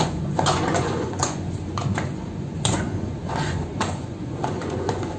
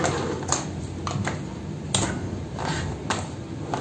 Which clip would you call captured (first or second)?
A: second